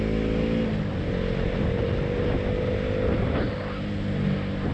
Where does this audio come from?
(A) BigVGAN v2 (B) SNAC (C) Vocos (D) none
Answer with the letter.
D